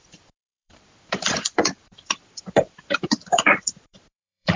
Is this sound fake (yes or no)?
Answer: yes